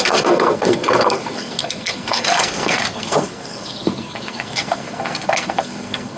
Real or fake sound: fake